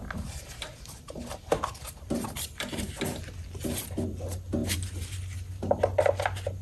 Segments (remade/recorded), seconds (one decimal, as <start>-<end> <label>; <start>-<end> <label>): 0.0-2.9 remade; 2.9-4.6 recorded; 4.6-5.5 remade; 5.5-6.6 recorded